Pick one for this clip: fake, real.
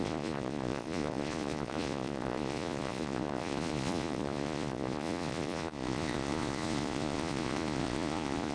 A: fake